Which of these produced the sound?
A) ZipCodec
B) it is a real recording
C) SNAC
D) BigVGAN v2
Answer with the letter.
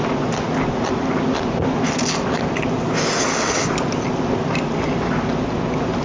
B